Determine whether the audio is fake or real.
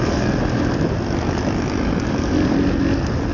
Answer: real